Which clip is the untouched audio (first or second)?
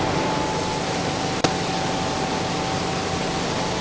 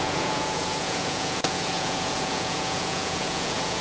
first